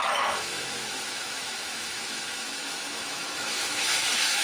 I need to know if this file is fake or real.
fake